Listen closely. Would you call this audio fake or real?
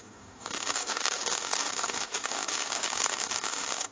fake